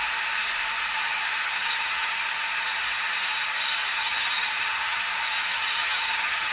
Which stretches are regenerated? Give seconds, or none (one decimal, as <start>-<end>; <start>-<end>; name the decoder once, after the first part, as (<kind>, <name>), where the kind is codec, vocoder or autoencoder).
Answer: 1.5-2.1 (vocoder, HiFi-GAN); 4.0-5.0; 5.5-6.5